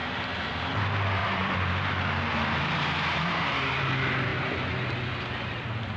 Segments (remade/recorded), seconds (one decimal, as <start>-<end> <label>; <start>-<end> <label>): 0.0-1.2 recorded; 1.2-3.8 remade; 3.8-6.0 recorded